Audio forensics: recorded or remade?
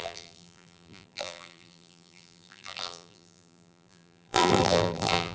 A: remade